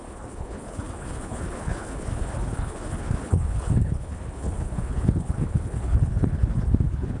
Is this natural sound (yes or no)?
no